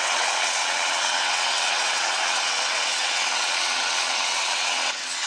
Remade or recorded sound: remade